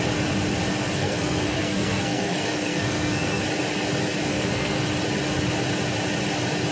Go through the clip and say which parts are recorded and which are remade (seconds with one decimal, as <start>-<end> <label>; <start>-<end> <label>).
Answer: 0.0-0.7 recorded; 0.7-3.4 remade; 3.4-4.3 recorded; 4.3-4.8 remade; 4.8-6.7 recorded